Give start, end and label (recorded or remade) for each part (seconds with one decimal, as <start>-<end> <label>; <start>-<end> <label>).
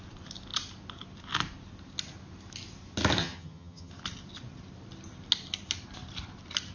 0.0-3.2 recorded; 3.2-3.9 remade; 3.9-6.7 recorded